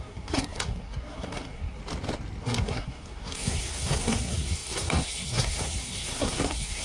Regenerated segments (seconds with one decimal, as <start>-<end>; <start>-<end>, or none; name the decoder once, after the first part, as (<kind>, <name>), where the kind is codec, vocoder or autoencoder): 0.0-1.8 (codec, SNAC); 2.4-6.8